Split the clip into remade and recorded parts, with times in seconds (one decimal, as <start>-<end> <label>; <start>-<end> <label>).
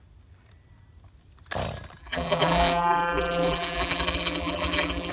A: 0.0-2.0 recorded; 2.0-5.1 remade